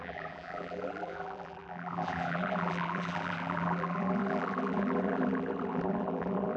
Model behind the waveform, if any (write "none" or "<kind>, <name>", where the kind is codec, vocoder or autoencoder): vocoder, BigVGAN v2